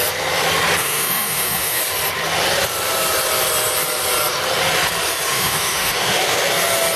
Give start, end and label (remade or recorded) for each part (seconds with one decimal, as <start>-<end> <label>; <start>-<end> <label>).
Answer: 0.0-0.8 recorded; 0.8-1.8 remade; 1.8-5.3 recorded; 5.3-6.4 remade; 6.4-7.0 recorded